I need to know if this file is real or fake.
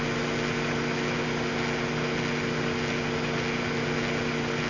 real